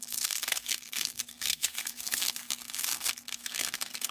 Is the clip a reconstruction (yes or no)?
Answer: yes